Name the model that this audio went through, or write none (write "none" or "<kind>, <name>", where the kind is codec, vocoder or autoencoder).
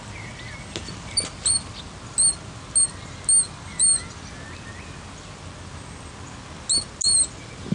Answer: none